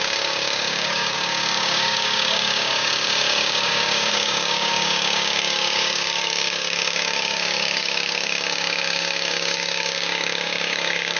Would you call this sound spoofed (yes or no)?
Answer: yes